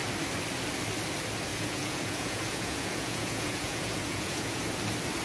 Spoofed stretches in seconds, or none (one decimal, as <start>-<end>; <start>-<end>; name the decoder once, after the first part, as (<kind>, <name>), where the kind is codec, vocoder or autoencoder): 1.5-4.6 (vocoder, Vocos)